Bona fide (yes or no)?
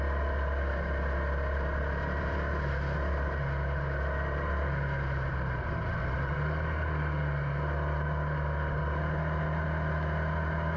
yes